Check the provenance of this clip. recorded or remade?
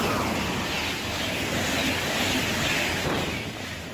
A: recorded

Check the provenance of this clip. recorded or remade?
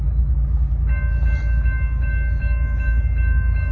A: recorded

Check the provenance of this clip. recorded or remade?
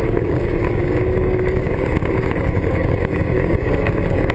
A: remade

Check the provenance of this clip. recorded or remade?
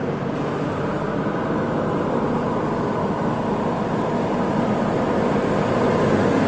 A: recorded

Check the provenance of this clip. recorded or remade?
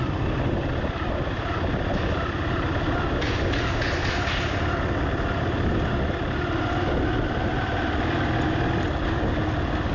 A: recorded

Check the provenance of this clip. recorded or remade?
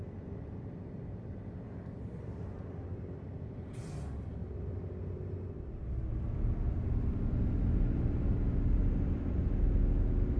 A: recorded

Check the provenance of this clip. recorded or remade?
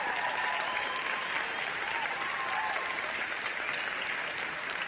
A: remade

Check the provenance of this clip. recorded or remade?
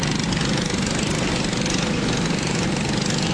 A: recorded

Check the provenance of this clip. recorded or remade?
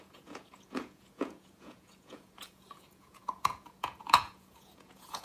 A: remade